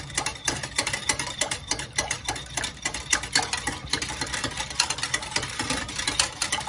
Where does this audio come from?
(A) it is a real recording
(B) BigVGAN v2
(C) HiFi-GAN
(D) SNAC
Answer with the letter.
A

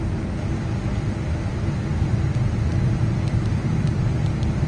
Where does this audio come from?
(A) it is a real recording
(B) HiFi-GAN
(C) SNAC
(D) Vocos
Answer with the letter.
A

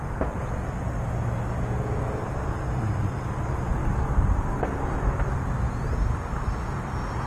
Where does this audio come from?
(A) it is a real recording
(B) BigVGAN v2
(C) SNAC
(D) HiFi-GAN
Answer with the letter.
A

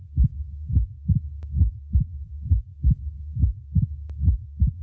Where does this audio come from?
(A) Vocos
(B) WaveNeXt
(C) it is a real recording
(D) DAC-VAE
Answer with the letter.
C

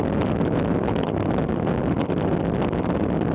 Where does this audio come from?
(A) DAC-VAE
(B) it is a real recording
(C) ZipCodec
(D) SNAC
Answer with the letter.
B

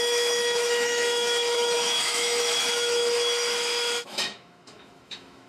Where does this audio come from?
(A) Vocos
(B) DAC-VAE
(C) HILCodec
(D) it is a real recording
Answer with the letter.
B